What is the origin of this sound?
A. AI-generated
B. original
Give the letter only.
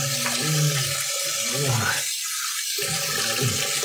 B